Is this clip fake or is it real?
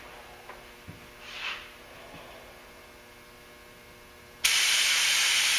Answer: real